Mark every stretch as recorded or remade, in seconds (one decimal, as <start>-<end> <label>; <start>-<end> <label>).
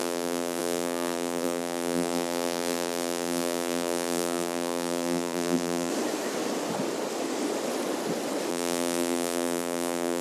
0.0-5.9 remade; 5.9-8.5 recorded; 8.5-10.2 remade